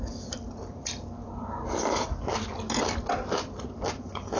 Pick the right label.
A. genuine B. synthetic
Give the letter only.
A